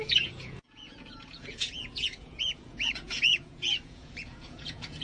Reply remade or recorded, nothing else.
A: remade